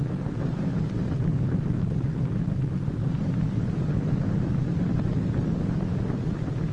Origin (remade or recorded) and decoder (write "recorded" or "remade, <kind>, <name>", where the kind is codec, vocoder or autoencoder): recorded